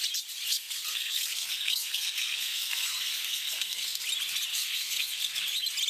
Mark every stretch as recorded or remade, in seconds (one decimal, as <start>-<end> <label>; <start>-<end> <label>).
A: 0.0-0.5 recorded; 0.5-4.0 remade; 4.0-4.5 recorded; 4.5-5.4 remade; 5.4-5.9 recorded